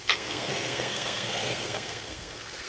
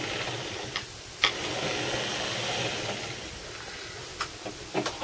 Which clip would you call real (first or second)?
second